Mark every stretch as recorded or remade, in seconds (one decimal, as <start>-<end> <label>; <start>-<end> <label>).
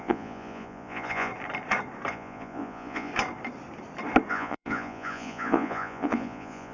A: 0.0-1.3 remade; 1.3-2.1 recorded; 2.1-3.1 remade; 3.1-4.3 recorded; 4.3-6.7 remade